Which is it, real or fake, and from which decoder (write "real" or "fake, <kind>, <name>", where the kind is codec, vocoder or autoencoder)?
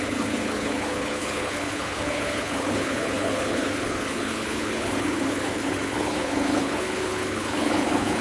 fake, codec, HILCodec